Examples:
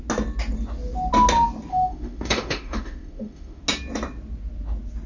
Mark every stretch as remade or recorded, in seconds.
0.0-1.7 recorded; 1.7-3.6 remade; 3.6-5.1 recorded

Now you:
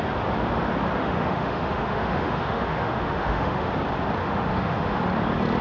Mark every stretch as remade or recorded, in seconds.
0.0-1.0 recorded; 1.0-3.7 remade; 3.7-4.2 recorded; 4.2-5.0 remade; 5.0-5.6 recorded

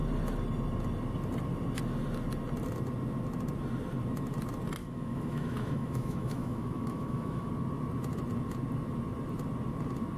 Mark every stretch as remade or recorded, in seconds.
0.0-4.8 recorded; 4.8-7.5 remade; 7.5-10.2 recorded

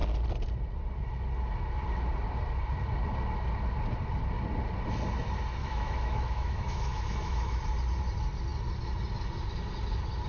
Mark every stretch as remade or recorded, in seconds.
0.0-5.6 recorded; 5.6-7.6 remade; 7.6-10.3 recorded

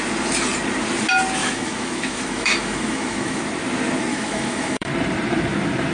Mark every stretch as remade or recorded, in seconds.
0.0-1.4 recorded; 1.4-3.4 remade; 3.4-4.1 recorded; 4.1-4.9 remade; 4.9-5.9 recorded

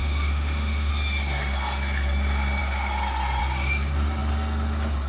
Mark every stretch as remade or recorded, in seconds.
0.0-0.9 remade; 0.9-5.1 recorded

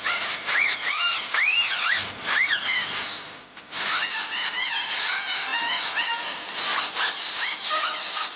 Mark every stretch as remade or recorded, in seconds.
0.0-8.4 recorded